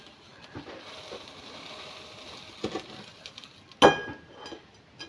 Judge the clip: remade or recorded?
recorded